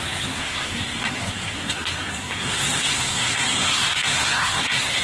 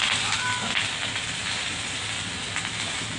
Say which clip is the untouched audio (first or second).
second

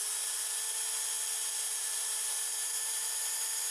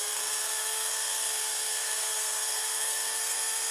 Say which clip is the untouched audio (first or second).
first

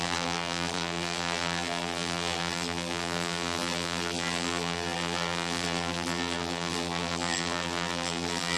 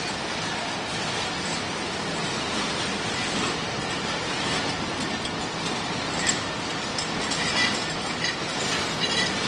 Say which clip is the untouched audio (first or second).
second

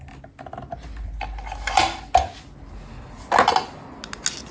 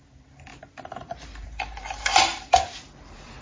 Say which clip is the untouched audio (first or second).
first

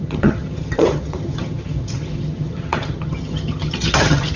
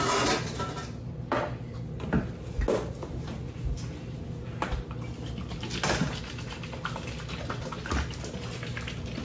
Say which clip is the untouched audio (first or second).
second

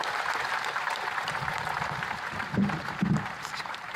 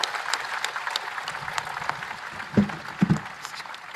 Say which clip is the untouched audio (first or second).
second